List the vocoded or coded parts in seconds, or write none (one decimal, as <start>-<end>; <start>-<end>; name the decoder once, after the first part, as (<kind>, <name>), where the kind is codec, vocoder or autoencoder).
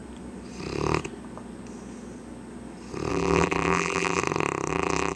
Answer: 3.1-4.2 (vocoder, BigVGAN v2); 4.7-5.2